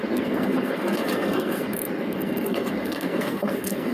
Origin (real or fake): fake